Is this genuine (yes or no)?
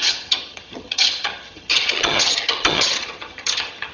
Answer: no